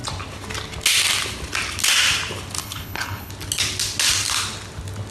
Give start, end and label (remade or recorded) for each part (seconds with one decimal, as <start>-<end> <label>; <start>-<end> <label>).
0.0-2.6 recorded; 2.6-3.3 remade; 3.3-5.1 recorded